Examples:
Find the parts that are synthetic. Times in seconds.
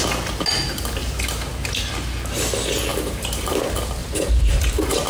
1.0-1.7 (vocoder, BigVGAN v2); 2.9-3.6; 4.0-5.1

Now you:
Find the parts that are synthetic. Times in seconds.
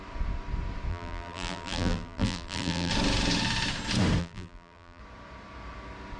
0.9-2.9 (vocoder, BigVGAN v2); 4.2-5.0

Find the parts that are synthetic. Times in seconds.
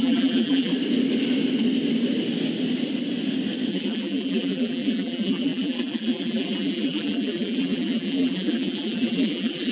0.0-0.7 (vocoder, BigVGAN v2); 3.7-9.7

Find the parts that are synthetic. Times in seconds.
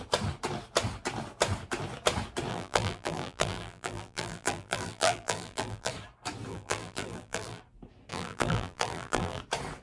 2.5-5.9 (vocoder, BigVGAN v2); 6.5-7.6; 8.1-9.4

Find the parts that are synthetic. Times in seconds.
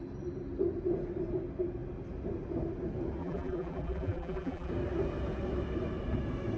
3.2-4.7 (vocoder, BigVGAN v2)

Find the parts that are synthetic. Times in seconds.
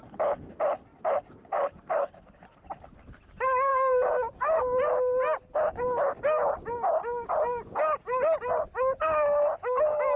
0.9-2.1 (vocoder, BigVGAN v2); 3.7-4.6